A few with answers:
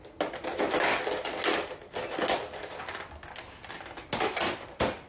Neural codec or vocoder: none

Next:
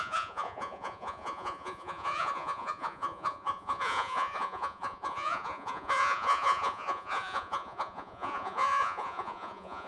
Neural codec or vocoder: vocoder, Vocos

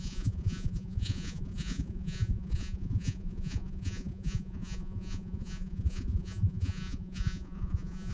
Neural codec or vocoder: vocoder, Vocos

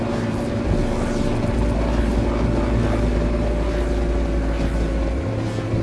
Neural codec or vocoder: none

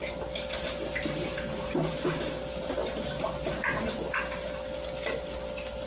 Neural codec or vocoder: none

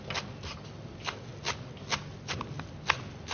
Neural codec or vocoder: none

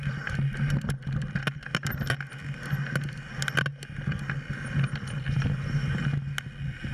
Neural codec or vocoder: none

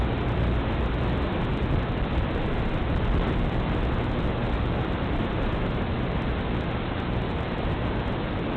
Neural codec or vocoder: none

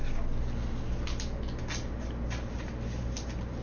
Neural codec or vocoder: none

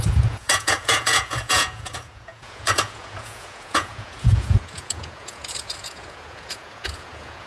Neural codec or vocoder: vocoder, Vocos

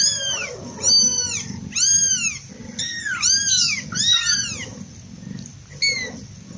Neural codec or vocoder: none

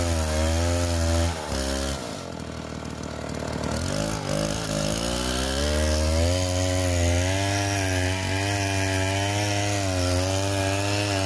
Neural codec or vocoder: none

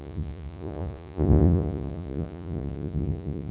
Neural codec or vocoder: vocoder, Vocos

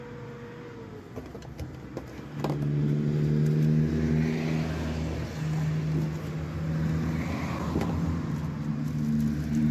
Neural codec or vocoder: none